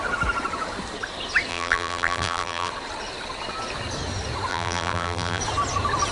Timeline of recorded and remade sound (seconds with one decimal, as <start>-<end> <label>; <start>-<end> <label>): 0.0-1.5 recorded; 1.5-2.7 remade; 2.7-4.5 recorded; 4.5-5.4 remade; 5.4-6.1 recorded